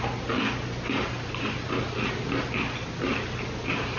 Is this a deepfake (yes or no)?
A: no